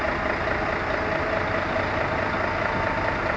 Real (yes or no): yes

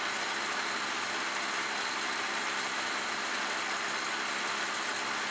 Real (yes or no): yes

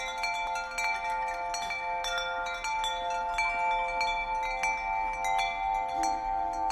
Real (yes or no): yes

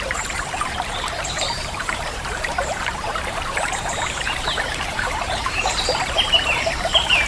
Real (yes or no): no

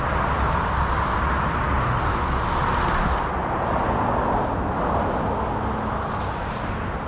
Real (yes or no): yes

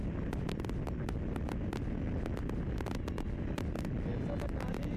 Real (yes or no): yes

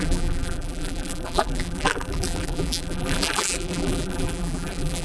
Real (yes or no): no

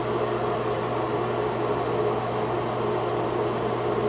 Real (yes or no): yes